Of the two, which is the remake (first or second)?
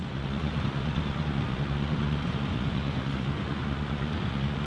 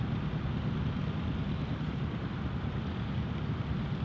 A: first